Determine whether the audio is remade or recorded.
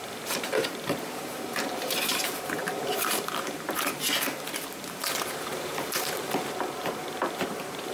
remade